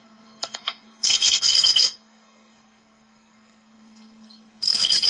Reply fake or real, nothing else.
fake